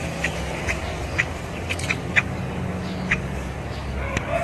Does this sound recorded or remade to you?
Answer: remade